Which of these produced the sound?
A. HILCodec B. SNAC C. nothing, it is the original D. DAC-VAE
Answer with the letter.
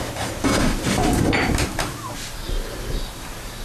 C